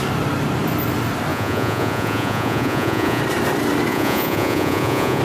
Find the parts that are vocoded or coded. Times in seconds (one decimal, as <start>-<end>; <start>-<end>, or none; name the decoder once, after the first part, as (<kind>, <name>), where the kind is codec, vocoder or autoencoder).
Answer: 1.3-3.2 (vocoder, Vocos); 3.9-5.2